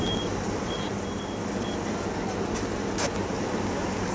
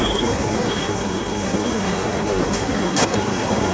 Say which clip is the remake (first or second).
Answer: second